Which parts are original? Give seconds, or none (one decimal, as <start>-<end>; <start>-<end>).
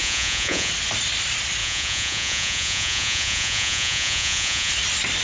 0.7-1.6; 4.7-5.2